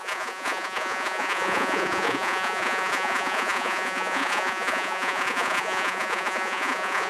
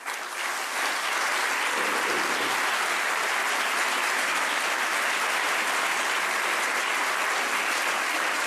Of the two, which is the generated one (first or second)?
first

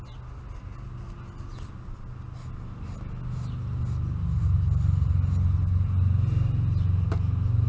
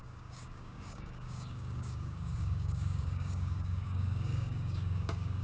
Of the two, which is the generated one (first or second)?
second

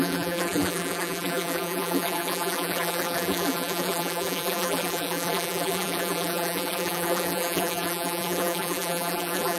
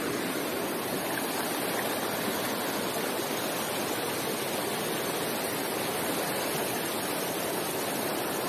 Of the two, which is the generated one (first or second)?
first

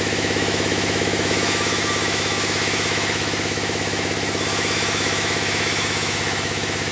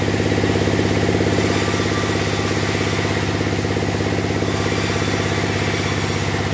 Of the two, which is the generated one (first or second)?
first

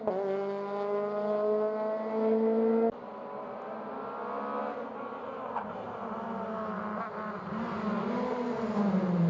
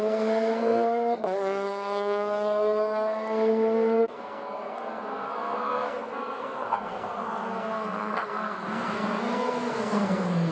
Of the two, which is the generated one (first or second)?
second